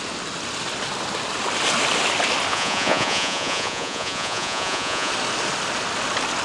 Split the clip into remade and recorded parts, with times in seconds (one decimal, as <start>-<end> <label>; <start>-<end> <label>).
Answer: 0.0-2.5 recorded; 2.5-5.1 remade; 5.1-6.4 recorded